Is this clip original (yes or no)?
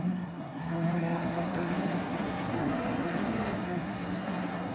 no